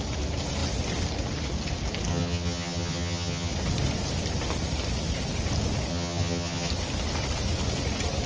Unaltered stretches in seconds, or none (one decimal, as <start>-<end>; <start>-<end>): 0.0-2.1; 3.5-5.9; 6.7-8.3